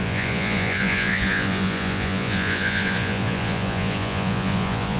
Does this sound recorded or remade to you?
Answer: remade